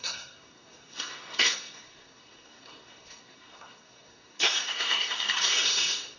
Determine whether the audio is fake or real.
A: fake